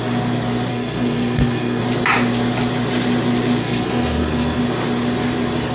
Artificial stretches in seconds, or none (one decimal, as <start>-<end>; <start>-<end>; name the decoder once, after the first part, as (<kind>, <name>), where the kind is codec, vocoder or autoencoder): 0.7-1.8 (codec, SNAC); 3.6-4.6